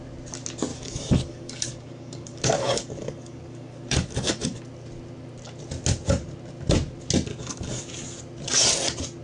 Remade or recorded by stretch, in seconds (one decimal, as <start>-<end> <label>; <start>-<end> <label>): 0.0-0.7 recorded; 0.7-4.6 remade; 4.6-7.3 recorded; 7.3-7.8 remade; 7.8-9.2 recorded